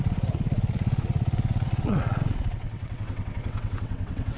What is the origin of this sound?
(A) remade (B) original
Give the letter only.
A